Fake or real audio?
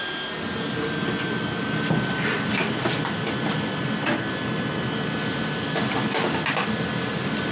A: real